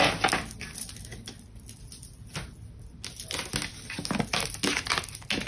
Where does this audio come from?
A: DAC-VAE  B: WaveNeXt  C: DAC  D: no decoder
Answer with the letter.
D